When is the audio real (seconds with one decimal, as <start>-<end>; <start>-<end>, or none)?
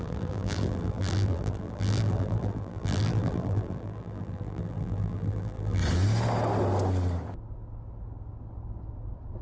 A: 5.8-9.4